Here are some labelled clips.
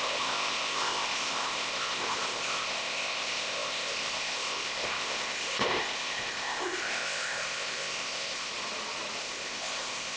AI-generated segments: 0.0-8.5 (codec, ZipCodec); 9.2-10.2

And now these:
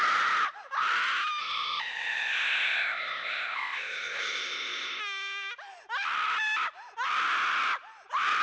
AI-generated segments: 1.4-5.0 (codec, ZipCodec)

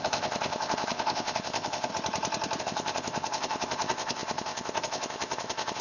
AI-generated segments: 0.0-1.9 (codec, ZipCodec); 2.6-5.8